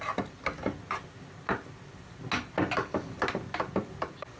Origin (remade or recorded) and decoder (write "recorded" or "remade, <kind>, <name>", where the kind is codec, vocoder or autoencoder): recorded